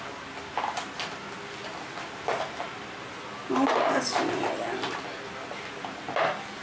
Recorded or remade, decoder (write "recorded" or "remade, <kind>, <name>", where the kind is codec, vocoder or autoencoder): recorded